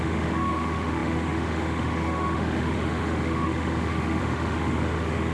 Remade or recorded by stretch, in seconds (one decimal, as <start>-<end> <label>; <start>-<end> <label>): 0.0-5.3 remade